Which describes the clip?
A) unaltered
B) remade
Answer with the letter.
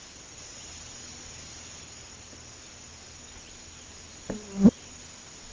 A